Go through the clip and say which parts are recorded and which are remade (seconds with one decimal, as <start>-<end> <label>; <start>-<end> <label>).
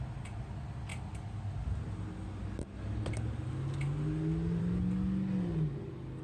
0.0-6.2 recorded